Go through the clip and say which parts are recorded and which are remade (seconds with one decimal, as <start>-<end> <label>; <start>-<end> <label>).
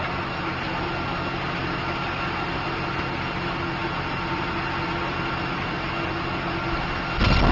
0.0-7.5 recorded